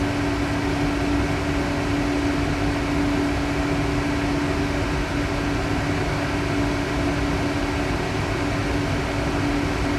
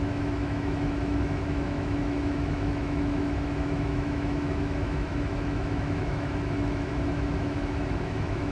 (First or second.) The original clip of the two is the first